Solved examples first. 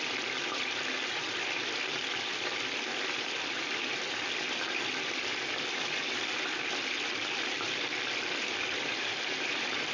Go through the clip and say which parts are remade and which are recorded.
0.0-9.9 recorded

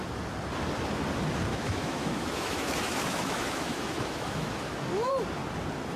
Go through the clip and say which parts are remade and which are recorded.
0.0-1.5 recorded; 1.5-5.1 remade; 5.1-6.0 recorded

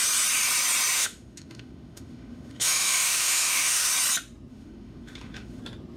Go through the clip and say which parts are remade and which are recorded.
0.0-0.9 recorded; 0.9-3.9 remade; 3.9-4.5 recorded; 4.5-5.6 remade; 5.6-6.0 recorded